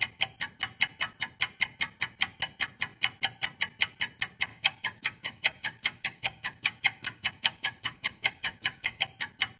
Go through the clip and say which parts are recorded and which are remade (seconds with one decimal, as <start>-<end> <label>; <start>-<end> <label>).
0.0-4.5 recorded; 4.5-9.0 remade; 9.0-9.6 recorded